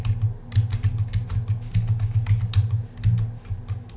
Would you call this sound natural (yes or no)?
yes